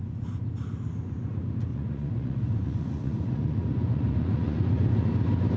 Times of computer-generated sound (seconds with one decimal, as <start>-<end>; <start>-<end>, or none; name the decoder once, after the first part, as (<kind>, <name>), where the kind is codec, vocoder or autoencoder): 1.7-5.1 (vocoder, Vocos)